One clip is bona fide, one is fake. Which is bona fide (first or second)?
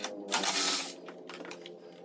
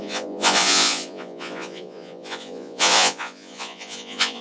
first